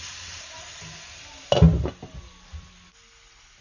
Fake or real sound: real